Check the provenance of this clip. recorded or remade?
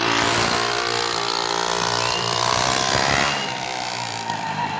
remade